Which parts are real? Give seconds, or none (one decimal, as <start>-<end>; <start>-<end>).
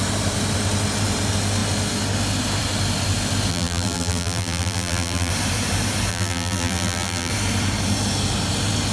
0.0-3.5; 5.3-6.1; 7.3-8.9